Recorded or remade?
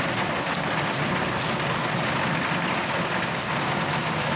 recorded